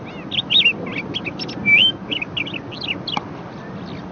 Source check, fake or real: real